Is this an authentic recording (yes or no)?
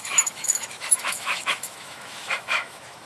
no